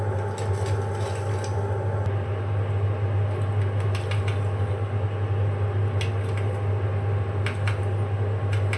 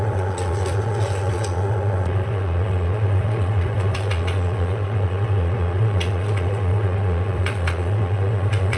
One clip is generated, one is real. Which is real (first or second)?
first